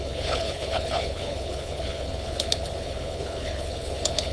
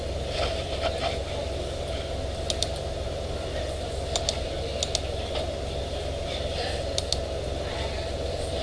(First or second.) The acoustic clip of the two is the second